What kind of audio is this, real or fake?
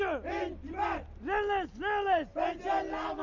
real